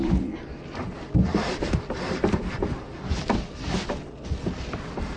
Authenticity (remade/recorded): recorded